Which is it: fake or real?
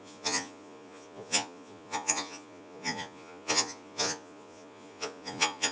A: fake